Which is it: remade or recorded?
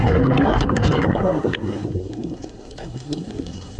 remade